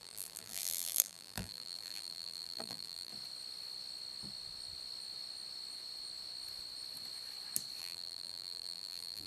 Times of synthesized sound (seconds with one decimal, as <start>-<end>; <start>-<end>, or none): 0.0-3.1; 7.8-9.3